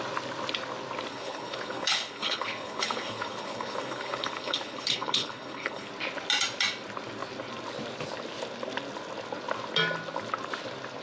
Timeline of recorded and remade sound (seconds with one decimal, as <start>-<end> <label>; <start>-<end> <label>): 0.0-1.1 recorded; 1.1-5.9 remade; 5.9-11.0 recorded